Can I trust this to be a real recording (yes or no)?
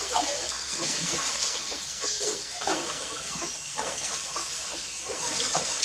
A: no